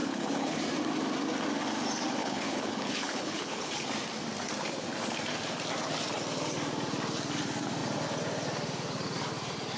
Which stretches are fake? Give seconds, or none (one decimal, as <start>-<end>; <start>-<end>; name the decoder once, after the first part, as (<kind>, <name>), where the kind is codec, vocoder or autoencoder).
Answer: 0.0-0.6 (codec, HILCodec); 2.2-3.7